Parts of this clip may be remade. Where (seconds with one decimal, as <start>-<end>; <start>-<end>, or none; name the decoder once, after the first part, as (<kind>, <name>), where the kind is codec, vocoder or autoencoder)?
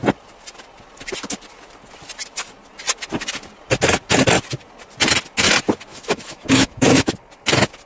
5.9-7.1 (autoencoder, DAC-VAE)